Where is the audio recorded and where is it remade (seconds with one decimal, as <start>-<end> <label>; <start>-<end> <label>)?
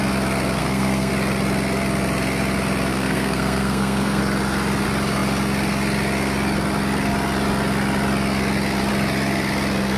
0.0-0.6 recorded; 0.6-1.1 remade; 1.1-2.9 recorded; 2.9-4.2 remade; 4.2-10.0 recorded